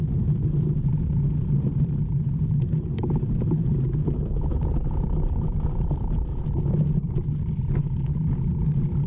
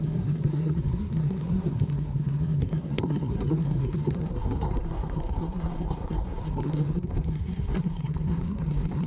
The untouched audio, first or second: first